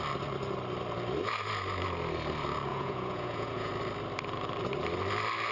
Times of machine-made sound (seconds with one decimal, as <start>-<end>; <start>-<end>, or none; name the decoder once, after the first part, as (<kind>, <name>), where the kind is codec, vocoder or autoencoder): 2.7-3.7 (vocoder, Vocos)